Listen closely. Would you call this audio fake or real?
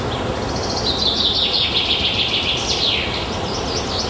real